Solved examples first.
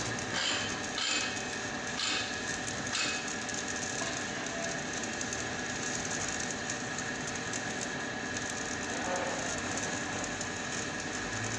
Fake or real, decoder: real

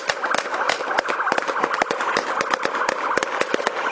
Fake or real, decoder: real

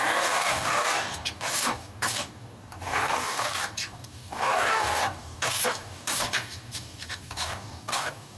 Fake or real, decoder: fake, codec, DAC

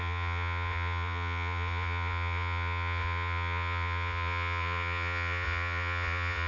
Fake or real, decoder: fake, vocoder, Vocos